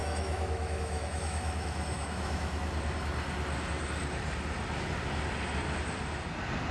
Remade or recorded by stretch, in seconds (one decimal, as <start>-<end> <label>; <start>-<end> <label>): 0.0-2.7 remade; 2.7-6.7 recorded